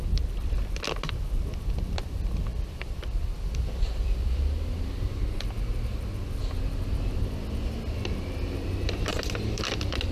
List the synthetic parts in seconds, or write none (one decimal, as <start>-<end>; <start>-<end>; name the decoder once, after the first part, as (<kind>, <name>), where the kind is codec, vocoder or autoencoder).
2.5-4.4 (vocoder, BigVGAN v2); 9.1-9.6